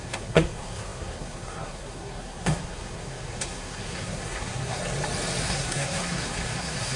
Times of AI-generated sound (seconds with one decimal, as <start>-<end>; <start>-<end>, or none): 0.0-4.8; 5.4-7.0